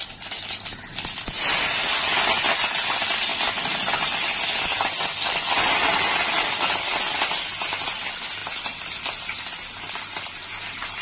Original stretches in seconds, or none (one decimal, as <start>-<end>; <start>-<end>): 0.0-11.0